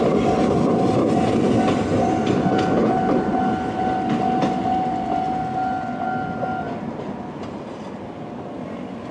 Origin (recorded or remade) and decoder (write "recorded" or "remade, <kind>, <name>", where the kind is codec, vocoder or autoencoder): recorded